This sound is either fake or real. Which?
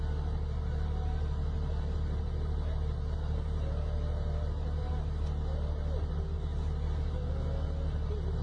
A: real